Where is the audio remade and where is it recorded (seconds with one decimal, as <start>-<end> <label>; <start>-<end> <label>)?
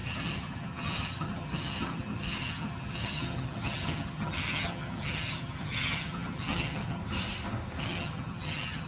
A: 0.0-7.0 remade; 7.0-7.8 recorded; 7.8-8.9 remade